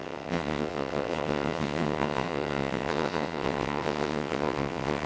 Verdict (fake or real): fake